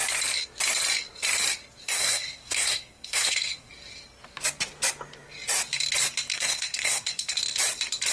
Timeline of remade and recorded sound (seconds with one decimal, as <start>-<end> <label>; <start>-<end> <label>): 0.0-1.8 recorded; 1.8-3.7 remade; 3.7-6.3 recorded; 6.3-7.4 remade; 7.4-8.1 recorded